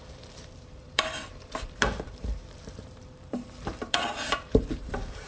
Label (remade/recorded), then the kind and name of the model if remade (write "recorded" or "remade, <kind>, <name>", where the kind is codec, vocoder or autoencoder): remade, vocoder, BigVGAN v2